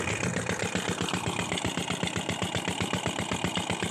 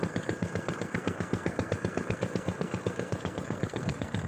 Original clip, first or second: first